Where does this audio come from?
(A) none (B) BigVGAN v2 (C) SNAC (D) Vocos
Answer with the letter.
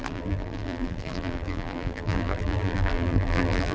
B